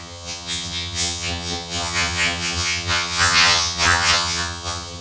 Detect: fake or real fake